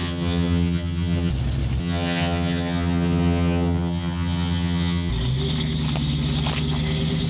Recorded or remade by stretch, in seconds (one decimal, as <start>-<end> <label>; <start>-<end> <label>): 0.0-1.3 remade; 1.3-1.8 recorded; 1.8-5.1 remade; 5.1-7.3 recorded